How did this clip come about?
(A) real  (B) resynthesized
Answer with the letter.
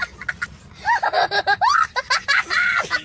A